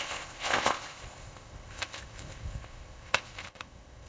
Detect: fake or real fake